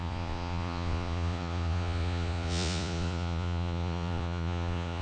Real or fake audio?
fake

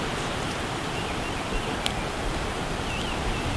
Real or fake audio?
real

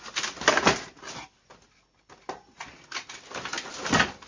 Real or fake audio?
real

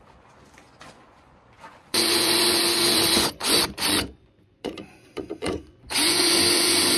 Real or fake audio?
fake